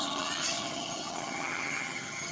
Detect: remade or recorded remade